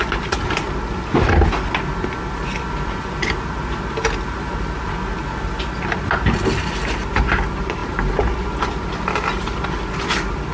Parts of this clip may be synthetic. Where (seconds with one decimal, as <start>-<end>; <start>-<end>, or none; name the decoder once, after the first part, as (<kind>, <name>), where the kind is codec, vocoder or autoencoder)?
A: none